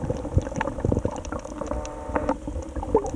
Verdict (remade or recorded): recorded